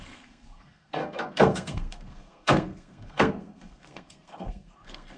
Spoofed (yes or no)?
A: yes